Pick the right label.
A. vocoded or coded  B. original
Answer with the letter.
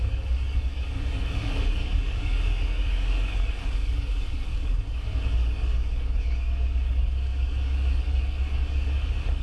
A